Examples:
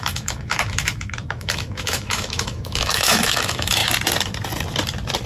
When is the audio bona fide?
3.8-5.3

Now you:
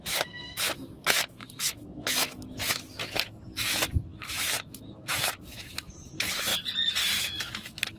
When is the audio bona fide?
6.5-7.2